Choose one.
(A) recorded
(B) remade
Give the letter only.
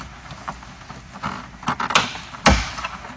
A